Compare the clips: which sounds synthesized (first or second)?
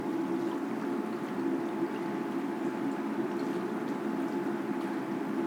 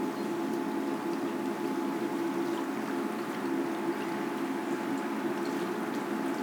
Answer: first